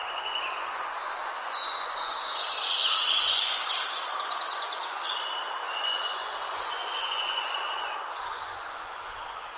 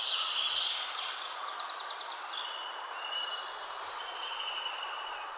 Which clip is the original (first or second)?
second